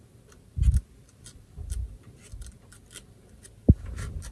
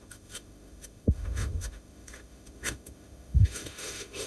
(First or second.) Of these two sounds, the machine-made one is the second